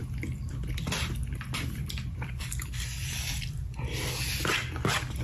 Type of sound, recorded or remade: recorded